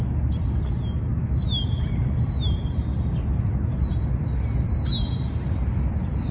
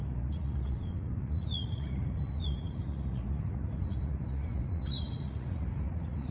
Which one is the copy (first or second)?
second